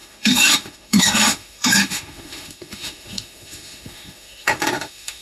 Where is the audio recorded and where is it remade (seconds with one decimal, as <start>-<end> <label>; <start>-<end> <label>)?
0.0-5.2 remade